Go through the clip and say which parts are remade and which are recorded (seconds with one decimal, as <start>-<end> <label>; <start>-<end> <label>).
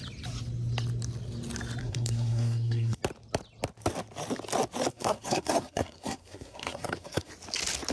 0.0-1.8 recorded; 1.8-3.0 remade; 3.0-4.9 recorded; 4.9-7.3 remade; 7.3-7.9 recorded